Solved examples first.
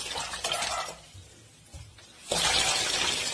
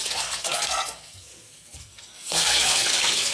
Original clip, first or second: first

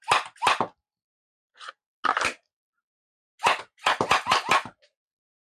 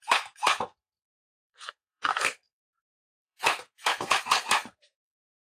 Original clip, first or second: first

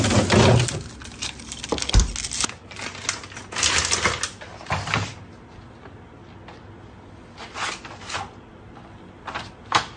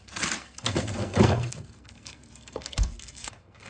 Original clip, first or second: first